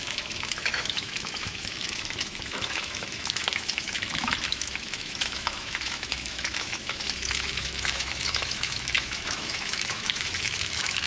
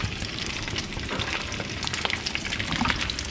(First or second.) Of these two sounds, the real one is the second